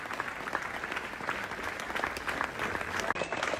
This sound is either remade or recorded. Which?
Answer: recorded